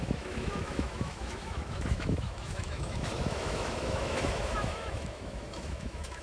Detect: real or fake fake